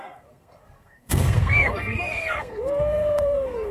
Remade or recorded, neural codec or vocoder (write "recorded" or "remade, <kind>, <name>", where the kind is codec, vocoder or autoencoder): remade, codec, SNAC